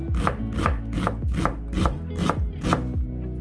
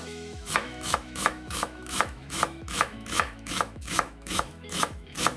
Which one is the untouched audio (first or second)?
first